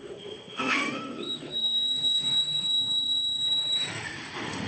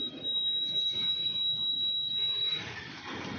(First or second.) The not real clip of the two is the first